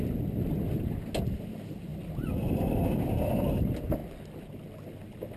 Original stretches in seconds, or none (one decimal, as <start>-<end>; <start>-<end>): 0.0-5.4

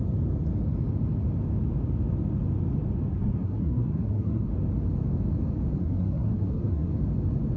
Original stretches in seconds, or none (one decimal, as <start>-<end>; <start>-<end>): 0.0-3.1; 4.5-5.8; 6.9-7.6

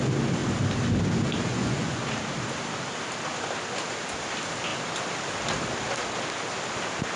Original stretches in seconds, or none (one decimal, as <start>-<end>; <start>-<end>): 0.0-1.5; 2.0-7.2